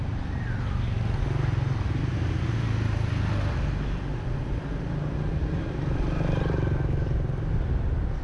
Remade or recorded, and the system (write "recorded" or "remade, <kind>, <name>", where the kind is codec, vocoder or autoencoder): recorded